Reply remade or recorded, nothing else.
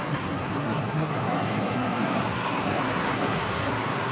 remade